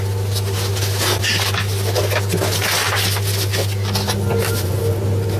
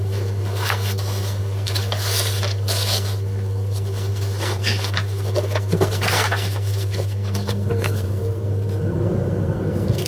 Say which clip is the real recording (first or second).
first